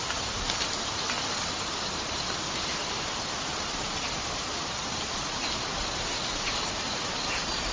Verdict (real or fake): real